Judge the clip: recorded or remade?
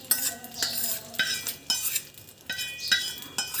recorded